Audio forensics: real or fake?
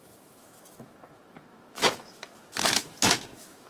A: fake